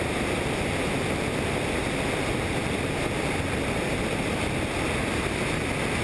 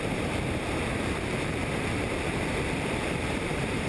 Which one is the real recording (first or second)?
first